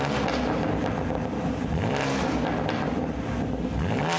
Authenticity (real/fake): real